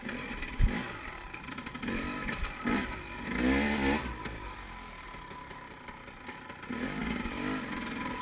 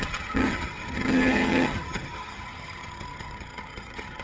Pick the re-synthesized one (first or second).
second